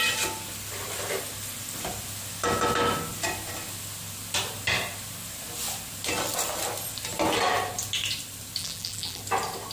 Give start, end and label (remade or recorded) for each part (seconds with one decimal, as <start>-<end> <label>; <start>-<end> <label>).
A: 0.0-8.6 recorded; 8.6-9.2 remade; 9.2-9.7 recorded